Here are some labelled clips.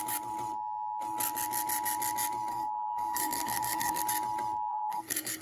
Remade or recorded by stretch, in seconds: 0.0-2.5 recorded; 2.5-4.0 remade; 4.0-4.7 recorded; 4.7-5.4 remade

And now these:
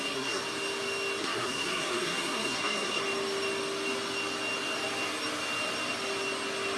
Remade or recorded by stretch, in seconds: 0.0-0.4 remade; 0.4-1.2 recorded; 1.2-3.0 remade; 3.0-6.8 recorded

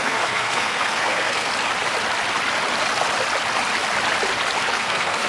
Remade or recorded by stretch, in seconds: 0.0-1.5 remade; 1.5-4.7 recorded; 4.7-5.3 remade

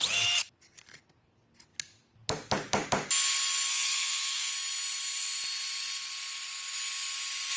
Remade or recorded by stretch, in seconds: 0.0-3.7 recorded; 3.7-4.5 remade; 4.5-7.6 recorded

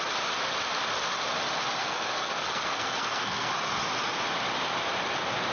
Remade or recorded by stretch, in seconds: 0.0-1.8 recorded; 1.8-3.5 remade; 3.5-5.5 recorded

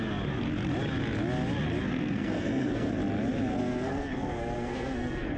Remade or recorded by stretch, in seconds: 0.0-1.9 recorded; 1.9-2.9 remade; 2.9-3.5 recorded; 3.5-5.4 remade